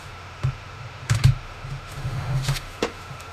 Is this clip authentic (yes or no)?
no